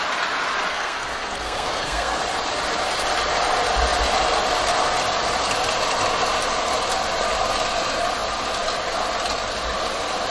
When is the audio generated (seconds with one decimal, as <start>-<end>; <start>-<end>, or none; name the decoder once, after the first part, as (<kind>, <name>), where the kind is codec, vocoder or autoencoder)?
0.7-2.2 (codec, SNAC)